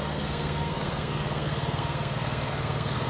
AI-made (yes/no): yes